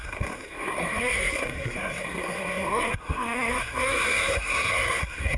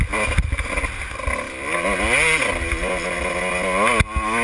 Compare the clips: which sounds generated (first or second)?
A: first